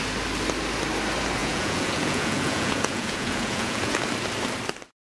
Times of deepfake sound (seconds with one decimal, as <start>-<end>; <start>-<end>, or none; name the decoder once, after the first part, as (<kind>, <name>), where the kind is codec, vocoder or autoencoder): 1.4-4.0 (vocoder, Vocos)